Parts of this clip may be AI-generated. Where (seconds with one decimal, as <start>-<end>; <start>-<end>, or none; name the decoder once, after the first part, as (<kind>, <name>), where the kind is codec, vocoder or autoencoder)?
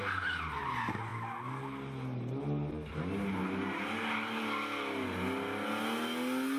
none